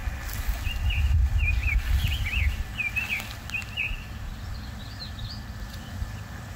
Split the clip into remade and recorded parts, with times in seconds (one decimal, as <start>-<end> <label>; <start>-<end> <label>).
0.0-6.6 recorded